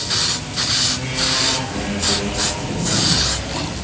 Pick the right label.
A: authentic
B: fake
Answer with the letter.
A